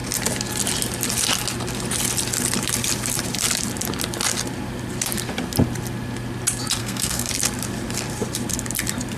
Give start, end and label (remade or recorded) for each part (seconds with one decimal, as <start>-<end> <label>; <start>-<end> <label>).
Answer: 0.0-6.8 recorded; 6.8-7.3 remade; 7.3-9.2 recorded